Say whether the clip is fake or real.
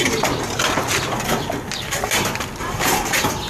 real